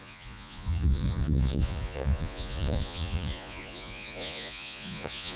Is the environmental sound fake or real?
fake